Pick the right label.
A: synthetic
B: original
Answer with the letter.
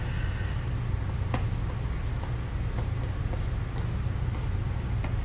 B